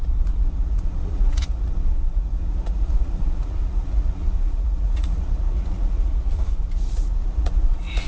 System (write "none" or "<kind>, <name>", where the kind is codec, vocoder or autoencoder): vocoder, Vocos